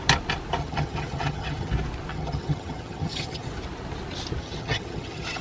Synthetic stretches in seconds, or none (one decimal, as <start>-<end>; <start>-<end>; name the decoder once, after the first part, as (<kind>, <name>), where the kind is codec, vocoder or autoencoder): 0.6-1.7 (vocoder, HiFi-GAN); 2.1-3.5; 4.4-5.4